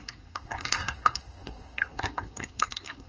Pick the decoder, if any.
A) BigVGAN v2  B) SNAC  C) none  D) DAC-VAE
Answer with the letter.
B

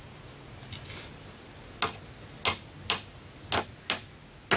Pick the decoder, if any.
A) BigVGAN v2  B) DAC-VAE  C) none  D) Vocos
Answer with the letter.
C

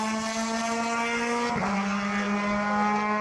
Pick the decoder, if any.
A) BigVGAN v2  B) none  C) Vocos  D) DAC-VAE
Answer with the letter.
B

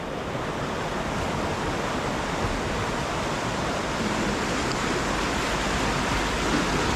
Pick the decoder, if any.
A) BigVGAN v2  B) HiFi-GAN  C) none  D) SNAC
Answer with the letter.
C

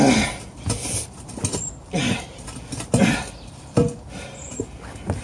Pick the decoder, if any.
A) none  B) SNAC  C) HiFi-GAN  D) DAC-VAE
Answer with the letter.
A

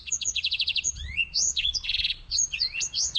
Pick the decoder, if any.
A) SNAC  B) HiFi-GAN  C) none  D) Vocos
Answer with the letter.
D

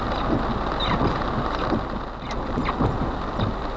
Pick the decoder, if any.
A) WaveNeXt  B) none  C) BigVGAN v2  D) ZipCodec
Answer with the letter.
B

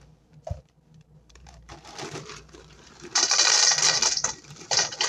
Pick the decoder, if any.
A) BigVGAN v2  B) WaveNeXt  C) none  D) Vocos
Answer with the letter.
A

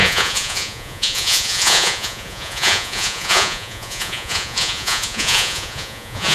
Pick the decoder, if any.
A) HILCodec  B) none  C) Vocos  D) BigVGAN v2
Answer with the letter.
C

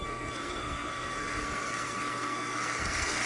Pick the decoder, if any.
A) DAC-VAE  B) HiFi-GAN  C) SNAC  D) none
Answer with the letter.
C